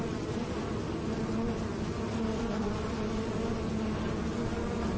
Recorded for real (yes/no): yes